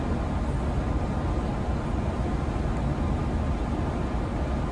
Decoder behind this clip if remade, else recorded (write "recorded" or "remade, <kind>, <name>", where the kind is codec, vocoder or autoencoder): recorded